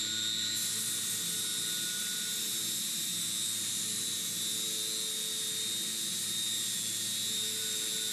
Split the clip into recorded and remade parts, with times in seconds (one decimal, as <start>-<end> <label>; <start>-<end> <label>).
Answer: 0.0-8.1 recorded